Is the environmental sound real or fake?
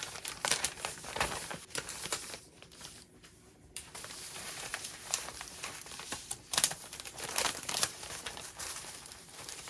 fake